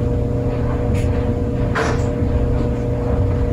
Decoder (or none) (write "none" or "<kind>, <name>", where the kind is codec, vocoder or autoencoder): none